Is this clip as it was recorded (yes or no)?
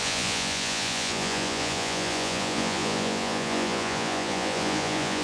no